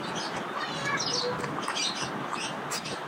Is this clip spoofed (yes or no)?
no